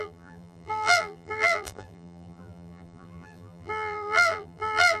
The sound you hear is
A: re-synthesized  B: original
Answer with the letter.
A